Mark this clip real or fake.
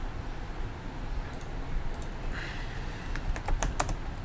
real